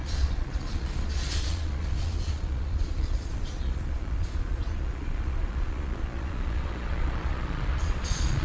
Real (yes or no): no